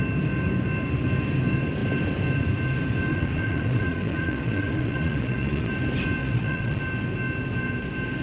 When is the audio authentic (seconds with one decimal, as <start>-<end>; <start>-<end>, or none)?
0.0-3.1; 5.7-6.2; 6.8-8.2